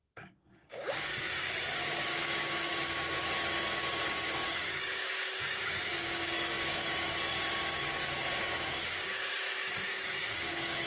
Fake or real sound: fake